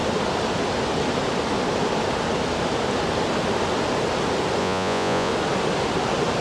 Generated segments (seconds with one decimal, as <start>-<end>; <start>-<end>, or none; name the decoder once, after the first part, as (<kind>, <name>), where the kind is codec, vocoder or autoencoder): 4.6-5.3 (vocoder, Vocos)

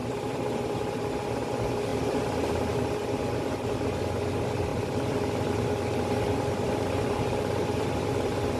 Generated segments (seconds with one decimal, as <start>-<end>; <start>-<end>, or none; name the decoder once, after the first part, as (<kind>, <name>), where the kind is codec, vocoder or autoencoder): 0.0-1.1 (vocoder, BigVGAN v2); 1.9-3.2; 4.7-8.6

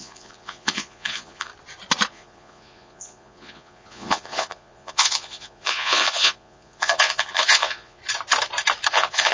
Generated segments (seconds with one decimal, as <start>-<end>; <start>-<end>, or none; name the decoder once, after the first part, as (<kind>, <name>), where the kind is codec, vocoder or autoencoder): 0.0-1.5 (vocoder, Vocos); 2.1-8.0; 8.9-9.3